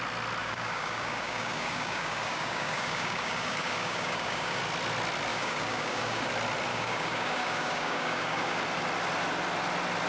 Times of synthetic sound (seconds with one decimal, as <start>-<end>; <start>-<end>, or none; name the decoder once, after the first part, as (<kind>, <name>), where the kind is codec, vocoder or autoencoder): 0.4-4.6 (codec, DAC); 5.3-6.3; 6.7-8.6